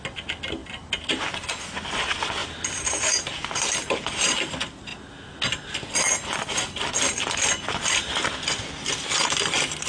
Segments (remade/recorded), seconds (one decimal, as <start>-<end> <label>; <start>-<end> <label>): 0.0-2.4 recorded; 2.4-4.5 remade; 4.5-9.9 recorded